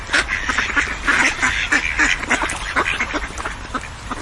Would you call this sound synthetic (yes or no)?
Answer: no